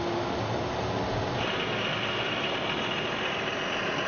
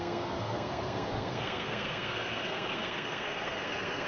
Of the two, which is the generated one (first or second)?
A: second